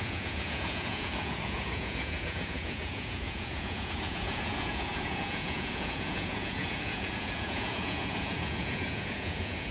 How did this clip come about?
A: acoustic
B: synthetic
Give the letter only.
B